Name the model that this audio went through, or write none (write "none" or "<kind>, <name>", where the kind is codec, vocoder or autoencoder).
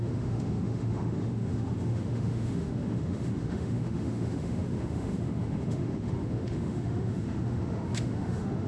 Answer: autoencoder, DAC-VAE